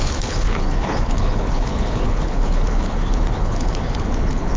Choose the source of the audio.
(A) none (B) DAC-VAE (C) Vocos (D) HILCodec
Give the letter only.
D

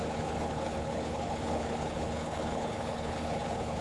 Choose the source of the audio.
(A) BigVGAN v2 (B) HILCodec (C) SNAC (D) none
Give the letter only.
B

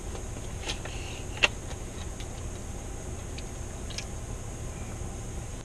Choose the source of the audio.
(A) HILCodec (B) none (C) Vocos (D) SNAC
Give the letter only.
B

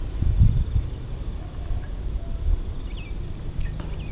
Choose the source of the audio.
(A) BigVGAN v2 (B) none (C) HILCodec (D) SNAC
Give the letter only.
B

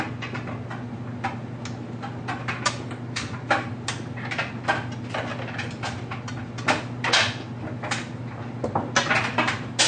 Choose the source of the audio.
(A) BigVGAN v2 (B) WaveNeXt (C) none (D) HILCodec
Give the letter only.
C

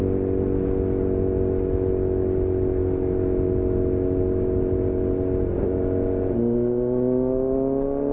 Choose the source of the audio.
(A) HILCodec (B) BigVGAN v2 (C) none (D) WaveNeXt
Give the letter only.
C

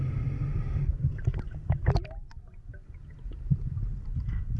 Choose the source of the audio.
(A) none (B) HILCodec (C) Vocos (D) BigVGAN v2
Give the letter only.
A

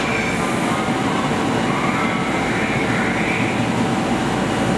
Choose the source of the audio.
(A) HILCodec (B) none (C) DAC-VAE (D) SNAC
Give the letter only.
B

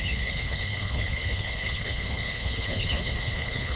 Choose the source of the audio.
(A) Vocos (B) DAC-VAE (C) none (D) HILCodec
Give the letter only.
D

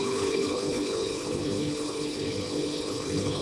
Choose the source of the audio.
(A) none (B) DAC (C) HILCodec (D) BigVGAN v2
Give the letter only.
C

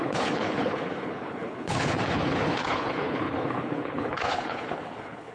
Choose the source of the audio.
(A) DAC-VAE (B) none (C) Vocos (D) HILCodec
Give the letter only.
D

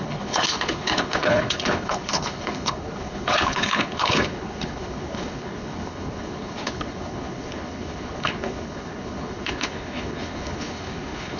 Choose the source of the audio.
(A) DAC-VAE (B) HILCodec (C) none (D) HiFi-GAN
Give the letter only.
B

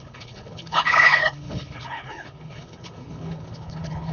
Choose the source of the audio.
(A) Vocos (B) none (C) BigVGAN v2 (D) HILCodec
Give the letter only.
D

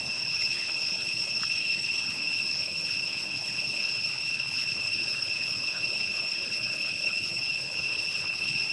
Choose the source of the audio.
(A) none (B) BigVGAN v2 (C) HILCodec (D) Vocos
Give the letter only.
C